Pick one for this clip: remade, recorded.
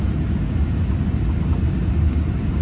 recorded